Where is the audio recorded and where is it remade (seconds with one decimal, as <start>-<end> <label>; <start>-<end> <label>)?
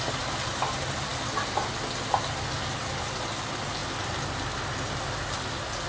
0.0-5.9 recorded